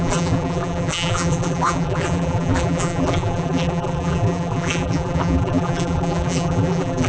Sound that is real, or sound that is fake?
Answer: fake